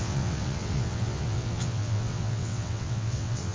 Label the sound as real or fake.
fake